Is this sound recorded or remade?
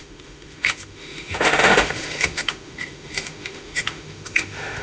remade